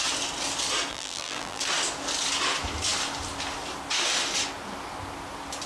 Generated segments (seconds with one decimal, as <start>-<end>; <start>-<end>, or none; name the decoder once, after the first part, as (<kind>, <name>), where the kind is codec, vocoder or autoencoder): 0.9-1.6 (vocoder, BigVGAN v2)